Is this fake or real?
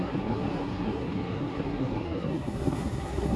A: fake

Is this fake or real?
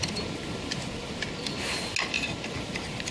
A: real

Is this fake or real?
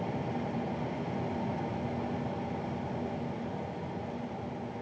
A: real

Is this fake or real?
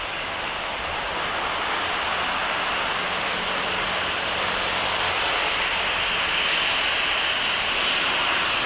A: real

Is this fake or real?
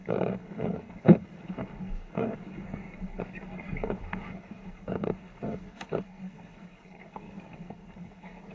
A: fake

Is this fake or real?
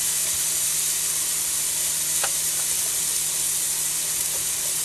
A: real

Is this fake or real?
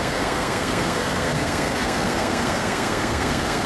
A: fake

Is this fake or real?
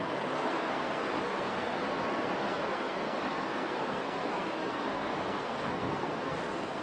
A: fake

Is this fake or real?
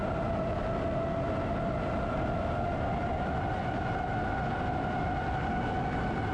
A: real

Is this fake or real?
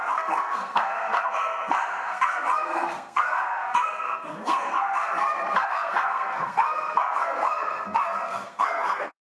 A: fake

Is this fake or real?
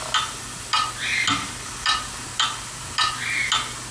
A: real